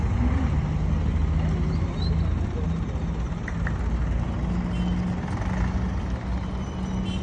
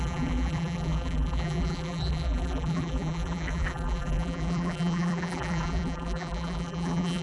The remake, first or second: second